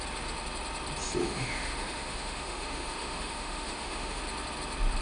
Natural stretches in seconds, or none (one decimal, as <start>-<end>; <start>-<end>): 0.0-1.2; 4.2-5.0